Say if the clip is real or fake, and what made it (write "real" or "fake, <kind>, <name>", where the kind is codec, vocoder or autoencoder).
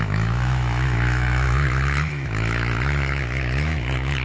fake, autoencoder, DAC-VAE